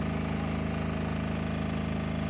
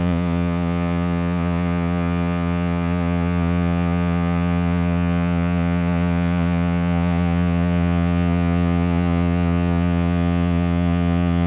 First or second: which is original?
first